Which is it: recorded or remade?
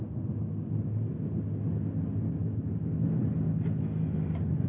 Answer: recorded